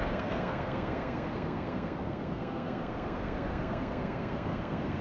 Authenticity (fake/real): fake